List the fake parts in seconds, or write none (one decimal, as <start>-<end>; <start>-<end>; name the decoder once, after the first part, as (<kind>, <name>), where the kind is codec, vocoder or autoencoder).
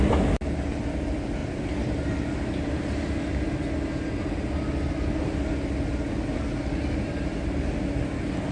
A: none